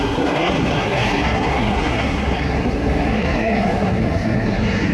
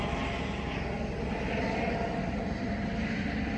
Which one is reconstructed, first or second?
first